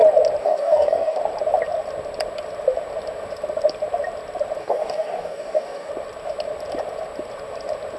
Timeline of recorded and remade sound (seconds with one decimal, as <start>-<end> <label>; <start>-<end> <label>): 0.0-0.4 recorded; 0.4-1.2 remade; 1.2-4.6 recorded; 4.6-5.9 remade; 5.9-8.0 recorded